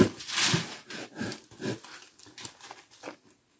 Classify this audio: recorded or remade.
recorded